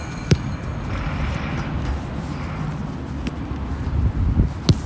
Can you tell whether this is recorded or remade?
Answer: recorded